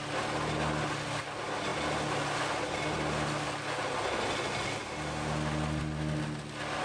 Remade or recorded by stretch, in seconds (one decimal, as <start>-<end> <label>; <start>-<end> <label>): 0.0-6.8 recorded